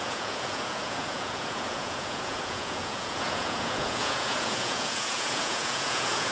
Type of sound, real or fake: fake